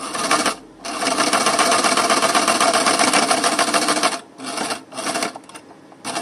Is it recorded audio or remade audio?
recorded